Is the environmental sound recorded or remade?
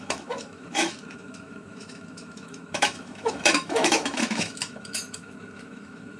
remade